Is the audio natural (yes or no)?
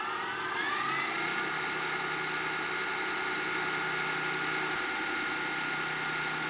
yes